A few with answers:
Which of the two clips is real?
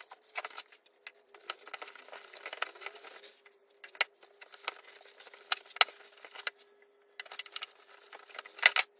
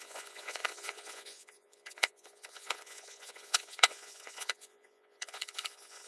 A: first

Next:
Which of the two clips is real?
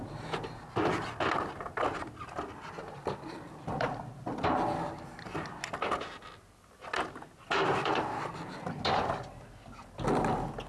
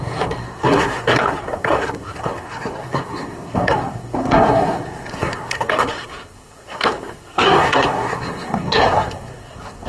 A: first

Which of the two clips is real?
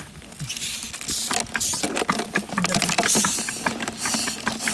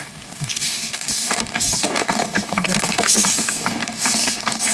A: first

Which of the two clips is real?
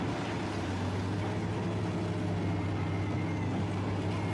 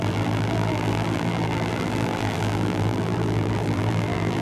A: first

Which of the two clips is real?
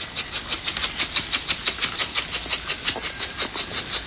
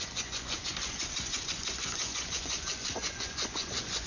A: first